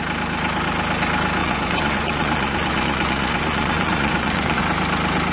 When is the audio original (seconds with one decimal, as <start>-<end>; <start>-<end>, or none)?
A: 0.0-1.4; 4.6-5.3